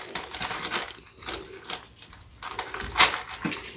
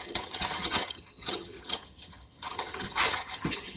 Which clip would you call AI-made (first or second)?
second